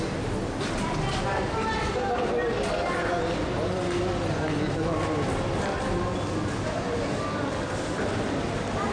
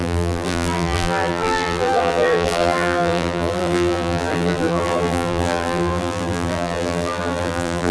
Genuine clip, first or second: first